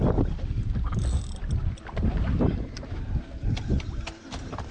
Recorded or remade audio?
remade